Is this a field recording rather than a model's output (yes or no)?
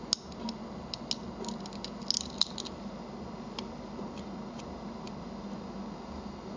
yes